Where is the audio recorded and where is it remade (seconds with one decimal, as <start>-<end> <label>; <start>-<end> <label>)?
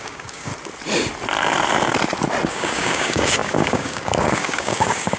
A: 0.0-0.5 remade; 0.5-2.5 recorded; 2.5-5.2 remade